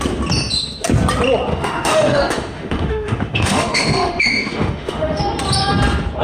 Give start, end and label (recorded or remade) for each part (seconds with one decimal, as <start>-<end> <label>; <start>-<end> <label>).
0.0-1.5 recorded; 1.5-5.2 remade; 5.2-6.2 recorded